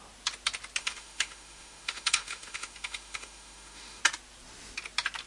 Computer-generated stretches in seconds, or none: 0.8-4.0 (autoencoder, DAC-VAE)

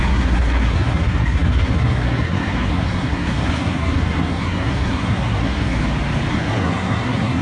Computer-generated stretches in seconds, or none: 0.0-5.8 (codec, SNAC); 6.3-7.4

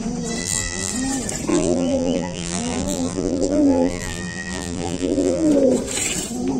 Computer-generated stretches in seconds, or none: 0.4-0.9 (vocoder, BigVGAN v2); 1.5-5.5

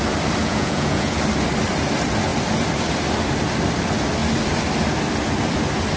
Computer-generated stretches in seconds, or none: 0.4-1.2 (vocoder, Vocos)

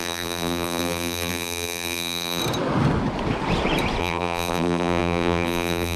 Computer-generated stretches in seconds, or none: 0.0-2.4 (vocoder, BigVGAN v2); 4.0-6.0

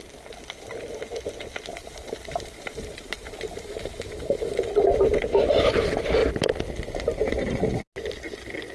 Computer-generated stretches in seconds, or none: 1.7-4.7 (vocoder, BigVGAN v2)

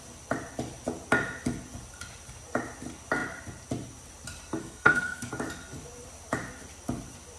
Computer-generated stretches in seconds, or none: 4.6-5.3 (codec, SNAC)